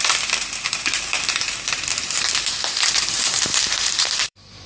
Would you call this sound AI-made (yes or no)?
yes